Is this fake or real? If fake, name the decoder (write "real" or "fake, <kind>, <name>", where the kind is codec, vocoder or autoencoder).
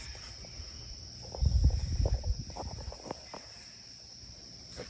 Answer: real